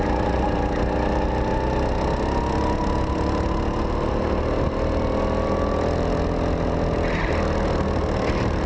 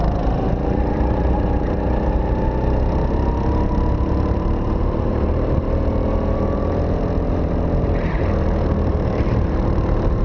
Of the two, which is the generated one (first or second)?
second